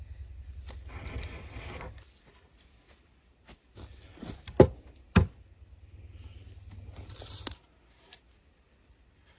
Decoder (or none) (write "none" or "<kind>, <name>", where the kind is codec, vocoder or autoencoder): none